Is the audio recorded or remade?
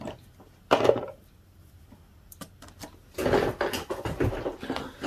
recorded